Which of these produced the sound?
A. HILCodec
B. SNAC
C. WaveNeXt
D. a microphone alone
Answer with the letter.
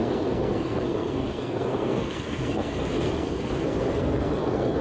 B